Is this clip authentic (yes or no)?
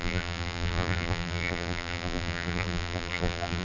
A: no